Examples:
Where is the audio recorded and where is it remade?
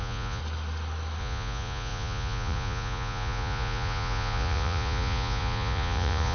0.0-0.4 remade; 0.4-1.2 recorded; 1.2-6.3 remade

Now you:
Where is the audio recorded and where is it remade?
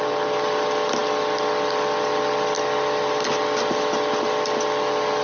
0.0-5.2 recorded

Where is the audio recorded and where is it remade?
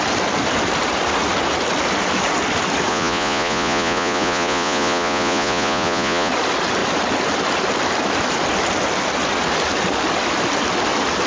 0.0-2.9 recorded; 2.9-6.3 remade; 6.3-11.3 recorded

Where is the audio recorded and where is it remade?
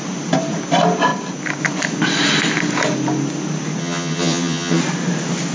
0.0-3.8 recorded; 3.8-4.8 remade; 4.8-5.5 recorded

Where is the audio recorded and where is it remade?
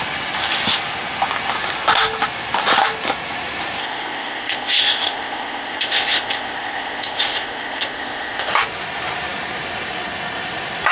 0.0-3.8 recorded; 3.8-8.5 remade; 8.5-10.9 recorded